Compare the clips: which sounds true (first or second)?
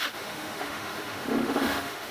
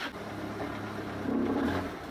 second